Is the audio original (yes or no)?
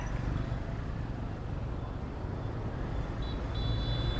yes